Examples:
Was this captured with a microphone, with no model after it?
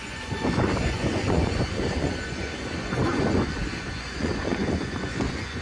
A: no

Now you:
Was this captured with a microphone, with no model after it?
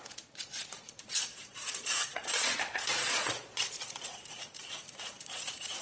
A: no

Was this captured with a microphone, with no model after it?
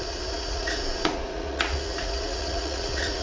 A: no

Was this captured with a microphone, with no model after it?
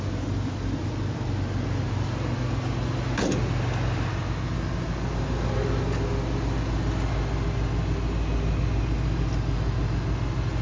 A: yes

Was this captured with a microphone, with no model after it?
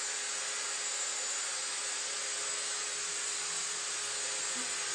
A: yes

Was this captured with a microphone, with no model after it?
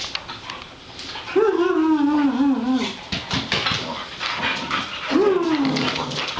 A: yes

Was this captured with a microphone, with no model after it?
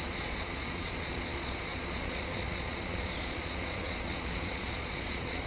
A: no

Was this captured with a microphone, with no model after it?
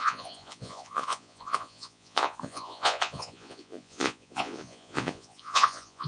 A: no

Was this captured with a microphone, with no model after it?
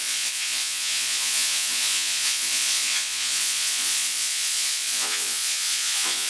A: no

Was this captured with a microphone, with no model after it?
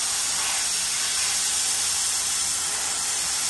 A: yes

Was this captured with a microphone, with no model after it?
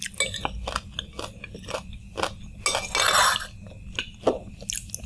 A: yes